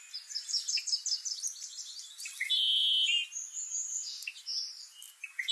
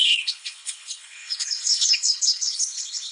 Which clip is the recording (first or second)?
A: first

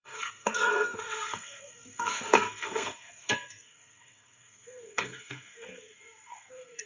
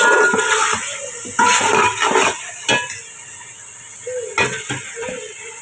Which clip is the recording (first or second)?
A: second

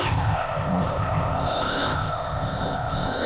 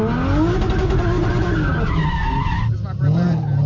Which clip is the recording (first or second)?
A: second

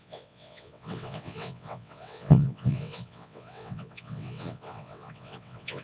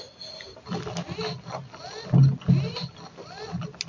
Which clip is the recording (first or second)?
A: second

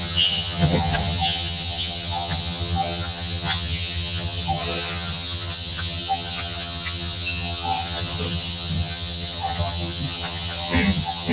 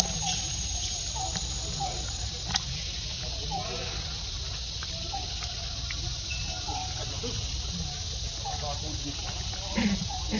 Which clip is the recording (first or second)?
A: second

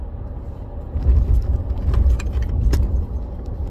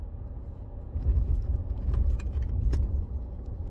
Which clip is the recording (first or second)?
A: first